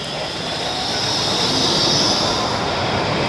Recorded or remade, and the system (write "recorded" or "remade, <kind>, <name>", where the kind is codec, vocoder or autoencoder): recorded